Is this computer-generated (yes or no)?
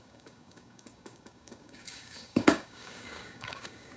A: yes